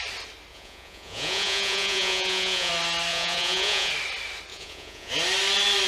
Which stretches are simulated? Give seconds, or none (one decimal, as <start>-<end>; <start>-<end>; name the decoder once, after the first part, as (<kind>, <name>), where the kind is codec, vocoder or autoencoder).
0.5-2.7 (vocoder, Vocos); 3.1-3.9; 4.5-5.1